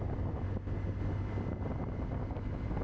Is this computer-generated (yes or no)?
no